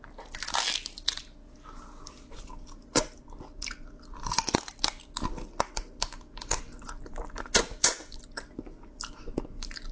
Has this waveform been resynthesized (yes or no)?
no